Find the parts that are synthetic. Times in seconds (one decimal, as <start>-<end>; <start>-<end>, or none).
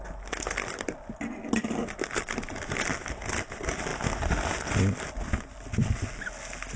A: none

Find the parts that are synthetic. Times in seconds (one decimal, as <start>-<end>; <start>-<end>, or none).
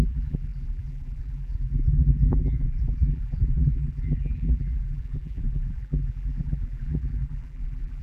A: 0.0-8.0